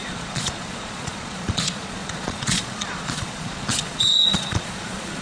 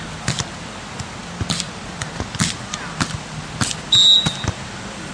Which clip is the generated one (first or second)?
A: first